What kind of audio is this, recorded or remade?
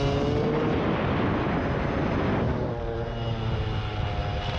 recorded